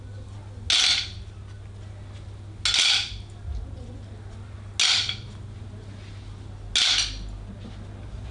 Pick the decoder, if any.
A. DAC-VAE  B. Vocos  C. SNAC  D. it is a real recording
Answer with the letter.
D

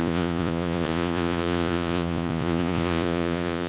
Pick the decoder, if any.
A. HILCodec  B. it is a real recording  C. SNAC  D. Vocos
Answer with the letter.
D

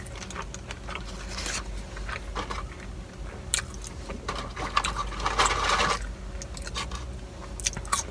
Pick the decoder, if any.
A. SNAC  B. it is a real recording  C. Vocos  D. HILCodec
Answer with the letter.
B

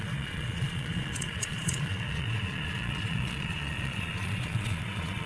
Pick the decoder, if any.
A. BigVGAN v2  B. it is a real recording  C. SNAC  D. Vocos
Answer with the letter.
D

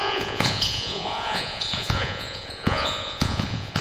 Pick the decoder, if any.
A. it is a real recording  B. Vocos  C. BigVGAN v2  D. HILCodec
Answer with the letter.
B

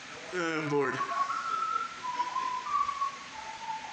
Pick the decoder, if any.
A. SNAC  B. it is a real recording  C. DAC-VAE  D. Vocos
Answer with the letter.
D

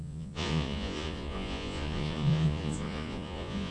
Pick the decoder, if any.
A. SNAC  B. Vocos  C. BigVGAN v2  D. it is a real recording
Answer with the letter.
B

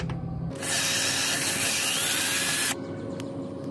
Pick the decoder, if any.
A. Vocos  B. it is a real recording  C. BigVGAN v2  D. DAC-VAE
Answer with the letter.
B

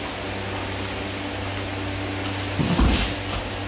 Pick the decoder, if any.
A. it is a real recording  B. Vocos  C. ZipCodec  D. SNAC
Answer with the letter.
A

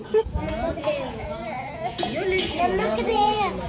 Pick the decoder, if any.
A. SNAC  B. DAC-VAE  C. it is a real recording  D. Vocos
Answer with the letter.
D